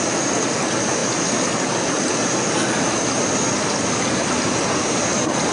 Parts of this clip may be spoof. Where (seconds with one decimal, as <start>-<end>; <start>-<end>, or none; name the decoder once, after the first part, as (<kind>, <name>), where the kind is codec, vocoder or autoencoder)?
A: none